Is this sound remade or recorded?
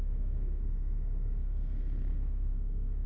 remade